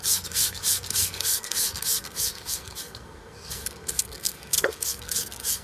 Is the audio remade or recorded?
remade